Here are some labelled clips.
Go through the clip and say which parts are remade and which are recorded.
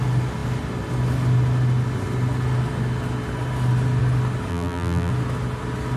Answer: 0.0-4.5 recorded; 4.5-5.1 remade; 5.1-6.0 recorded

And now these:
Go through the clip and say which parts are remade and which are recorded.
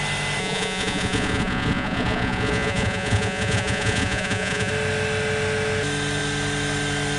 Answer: 0.0-0.4 recorded; 0.4-4.7 remade; 4.7-7.2 recorded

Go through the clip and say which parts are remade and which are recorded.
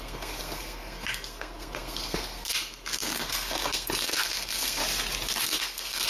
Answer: 0.0-4.8 remade; 4.8-5.4 recorded; 5.4-6.1 remade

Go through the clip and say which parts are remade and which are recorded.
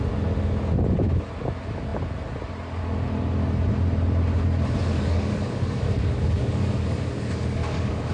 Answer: 0.0-4.9 recorded; 4.9-8.1 remade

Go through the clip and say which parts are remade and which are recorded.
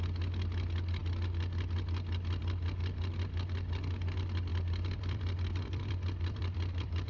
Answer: 0.0-4.5 recorded; 4.5-7.1 remade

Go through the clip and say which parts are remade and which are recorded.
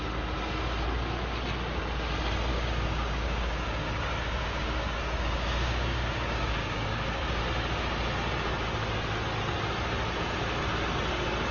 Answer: 0.0-2.5 recorded; 2.5-7.4 remade; 7.4-11.5 recorded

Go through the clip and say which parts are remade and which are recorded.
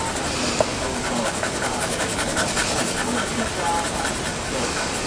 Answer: 0.0-0.7 recorded; 0.7-3.5 remade; 3.5-4.3 recorded; 4.3-5.1 remade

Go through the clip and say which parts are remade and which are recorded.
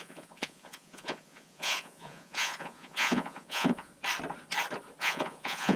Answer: 0.0-3.9 remade; 3.9-5.0 recorded; 5.0-5.8 remade